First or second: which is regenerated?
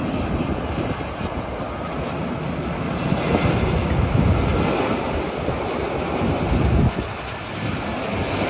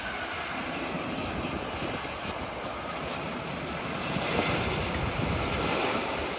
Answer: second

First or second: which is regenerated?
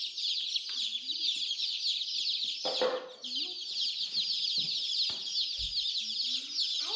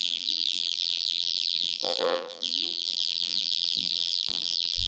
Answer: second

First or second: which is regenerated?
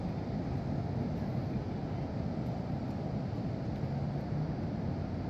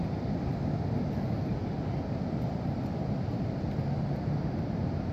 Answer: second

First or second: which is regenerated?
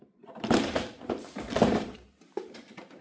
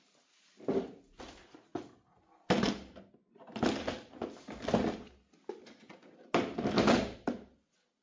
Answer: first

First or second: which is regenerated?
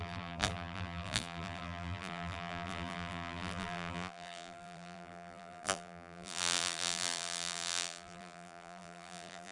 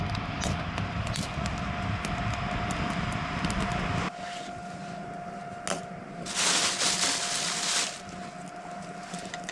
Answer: first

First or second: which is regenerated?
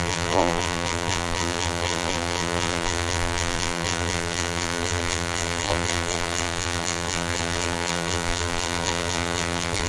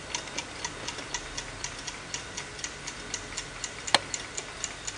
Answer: first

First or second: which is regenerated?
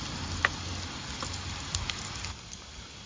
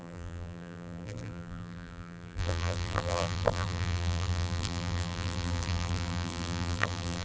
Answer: second